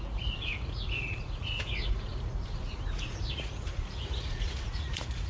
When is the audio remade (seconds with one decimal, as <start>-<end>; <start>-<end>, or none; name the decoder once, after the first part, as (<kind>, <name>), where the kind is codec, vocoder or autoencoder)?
0.0-5.3 (vocoder, Vocos)